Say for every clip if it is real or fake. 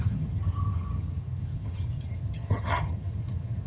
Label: fake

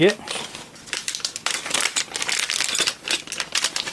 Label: fake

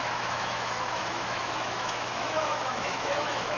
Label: fake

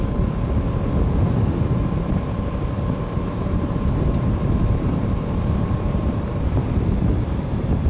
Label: fake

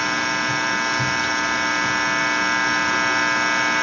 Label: real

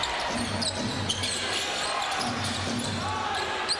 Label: real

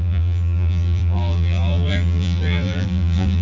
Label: fake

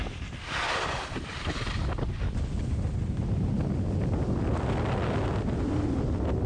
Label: real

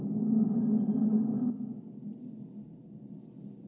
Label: real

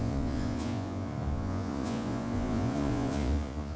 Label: fake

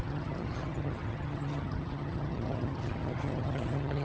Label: fake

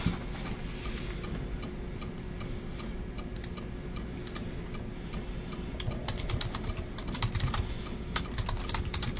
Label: real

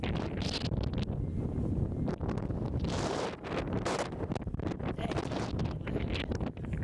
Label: real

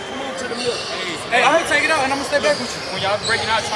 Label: real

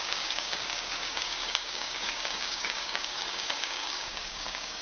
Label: fake